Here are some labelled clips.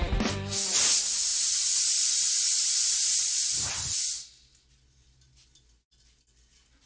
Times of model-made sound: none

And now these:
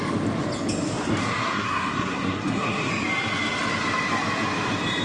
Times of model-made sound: 1.2-2.9 (codec, SNAC)

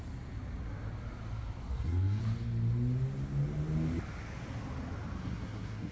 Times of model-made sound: 1.7-2.2 (codec, SNAC); 5.2-5.9